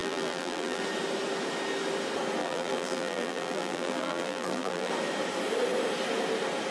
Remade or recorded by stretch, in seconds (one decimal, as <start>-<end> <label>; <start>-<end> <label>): 0.0-0.8 remade; 0.8-2.4 recorded; 2.4-4.9 remade; 4.9-6.7 recorded